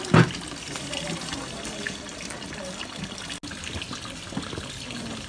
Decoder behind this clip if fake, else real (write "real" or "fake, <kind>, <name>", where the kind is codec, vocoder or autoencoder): real